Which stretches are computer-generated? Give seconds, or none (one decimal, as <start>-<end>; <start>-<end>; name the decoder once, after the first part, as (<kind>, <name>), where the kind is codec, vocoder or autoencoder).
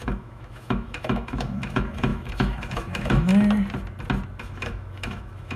0.0-3.3 (autoencoder, DAC-VAE); 4.4-5.6